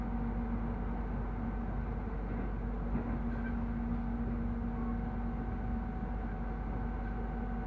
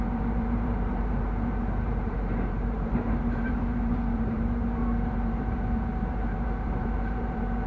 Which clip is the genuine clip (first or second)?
first